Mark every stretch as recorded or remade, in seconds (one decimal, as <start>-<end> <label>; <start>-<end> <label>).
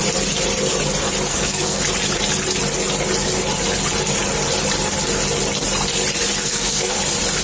0.0-1.3 recorded; 1.3-1.8 remade; 1.8-6.4 recorded; 6.4-7.0 remade; 7.0-7.4 recorded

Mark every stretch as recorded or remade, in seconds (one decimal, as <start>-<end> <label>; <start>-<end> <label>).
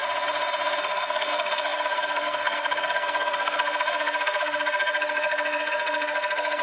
0.0-0.8 recorded; 0.8-6.6 remade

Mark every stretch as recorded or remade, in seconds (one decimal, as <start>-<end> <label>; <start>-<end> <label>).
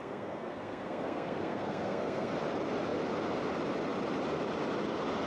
0.0-2.3 remade; 2.3-5.3 recorded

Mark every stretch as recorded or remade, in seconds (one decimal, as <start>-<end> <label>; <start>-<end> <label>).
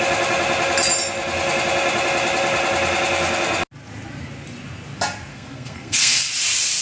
0.0-5.3 recorded; 5.3-6.3 remade; 6.3-6.8 recorded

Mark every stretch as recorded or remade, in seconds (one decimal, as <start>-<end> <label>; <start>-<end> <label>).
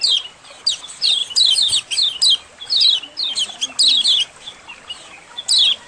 0.0-5.9 recorded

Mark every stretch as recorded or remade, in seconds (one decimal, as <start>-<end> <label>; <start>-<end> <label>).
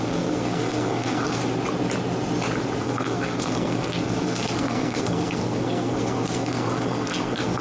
0.0-1.4 remade; 1.4-2.8 recorded; 2.8-7.6 remade